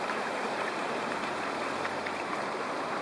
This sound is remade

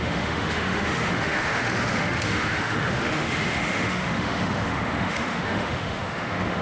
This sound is remade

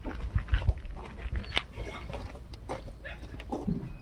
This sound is recorded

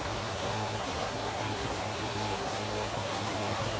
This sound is remade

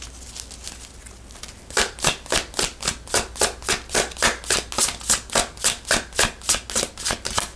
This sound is recorded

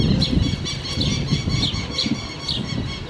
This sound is recorded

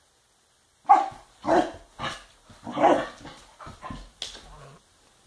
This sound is recorded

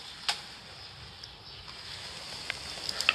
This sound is recorded